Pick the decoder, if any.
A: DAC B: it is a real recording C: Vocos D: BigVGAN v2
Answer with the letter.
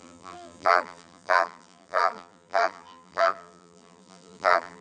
D